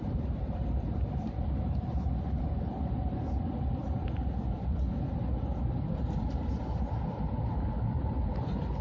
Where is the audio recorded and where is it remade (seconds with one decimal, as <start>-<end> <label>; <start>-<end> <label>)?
0.0-8.8 recorded